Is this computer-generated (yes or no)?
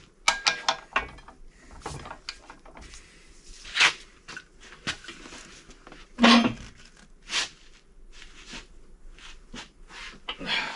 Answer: no